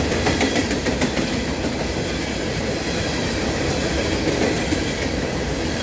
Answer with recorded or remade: recorded